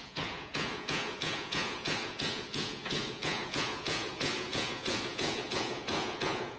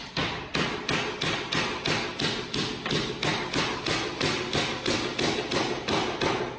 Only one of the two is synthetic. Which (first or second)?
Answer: first